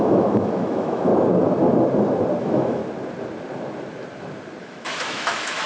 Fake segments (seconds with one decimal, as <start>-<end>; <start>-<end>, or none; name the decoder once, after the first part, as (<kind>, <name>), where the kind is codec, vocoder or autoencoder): 0.0-1.1 (autoencoder, DAC-VAE); 2.4-2.8; 4.6-5.7